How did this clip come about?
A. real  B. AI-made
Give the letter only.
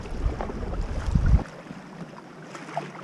A